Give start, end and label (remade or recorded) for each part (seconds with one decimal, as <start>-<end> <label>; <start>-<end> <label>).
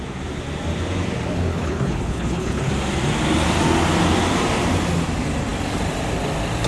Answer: 0.0-1.5 recorded; 1.5-2.7 remade; 2.7-6.7 recorded